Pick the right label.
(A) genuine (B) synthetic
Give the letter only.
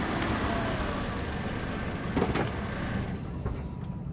A